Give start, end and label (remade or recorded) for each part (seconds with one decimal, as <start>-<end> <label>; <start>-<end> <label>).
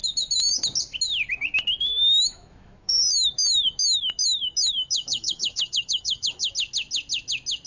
0.0-1.9 recorded; 1.9-6.5 remade; 6.5-7.7 recorded